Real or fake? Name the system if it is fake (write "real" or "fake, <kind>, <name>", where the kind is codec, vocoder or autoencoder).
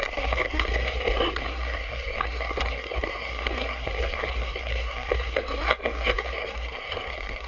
fake, codec, SNAC